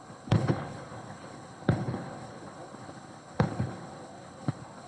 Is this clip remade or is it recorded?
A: remade